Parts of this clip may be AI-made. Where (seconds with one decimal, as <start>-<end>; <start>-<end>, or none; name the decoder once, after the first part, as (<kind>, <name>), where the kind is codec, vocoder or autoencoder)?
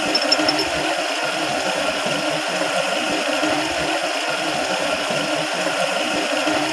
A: none